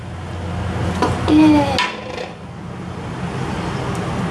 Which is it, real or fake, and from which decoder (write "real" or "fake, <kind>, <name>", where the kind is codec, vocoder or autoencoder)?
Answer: real